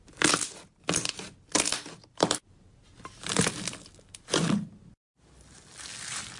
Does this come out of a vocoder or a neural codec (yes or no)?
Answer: no